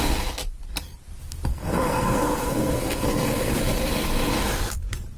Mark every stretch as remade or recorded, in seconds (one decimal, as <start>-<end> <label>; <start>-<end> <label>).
0.0-1.5 recorded; 1.5-3.6 remade; 3.6-5.2 recorded